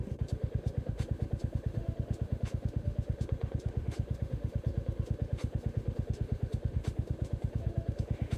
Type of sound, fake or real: fake